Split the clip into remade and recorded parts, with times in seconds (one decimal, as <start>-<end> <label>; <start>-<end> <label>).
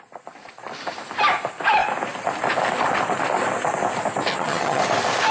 0.0-4.3 recorded; 4.3-4.8 remade; 4.8-5.3 recorded